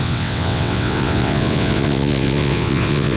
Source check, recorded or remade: remade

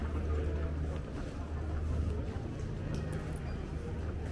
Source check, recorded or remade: recorded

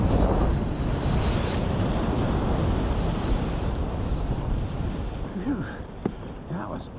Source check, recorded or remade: recorded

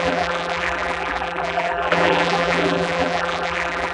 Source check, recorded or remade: remade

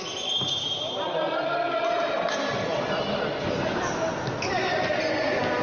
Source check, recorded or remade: recorded